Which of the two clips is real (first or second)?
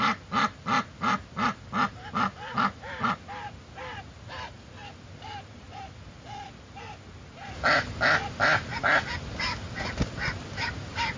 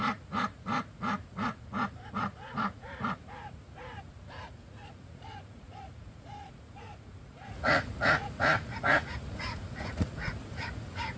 first